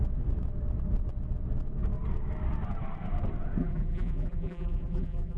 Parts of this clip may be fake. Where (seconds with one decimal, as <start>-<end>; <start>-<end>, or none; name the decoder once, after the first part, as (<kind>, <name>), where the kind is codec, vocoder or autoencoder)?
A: 3.6-5.4 (vocoder, BigVGAN v2)